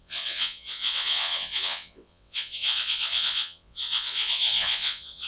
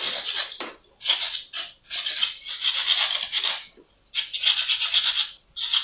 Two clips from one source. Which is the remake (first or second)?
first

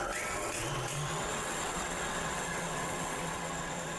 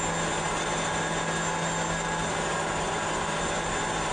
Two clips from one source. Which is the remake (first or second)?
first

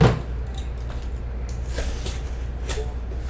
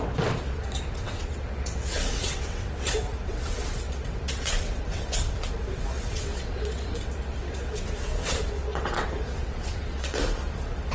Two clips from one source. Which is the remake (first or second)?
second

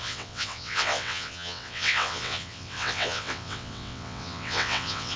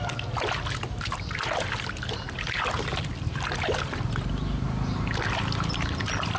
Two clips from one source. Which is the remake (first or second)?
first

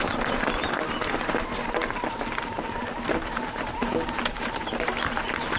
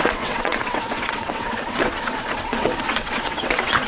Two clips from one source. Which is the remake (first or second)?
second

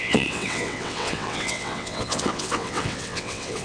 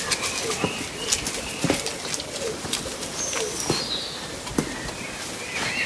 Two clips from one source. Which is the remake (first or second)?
first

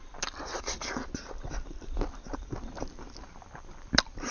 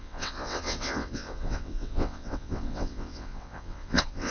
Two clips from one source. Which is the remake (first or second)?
second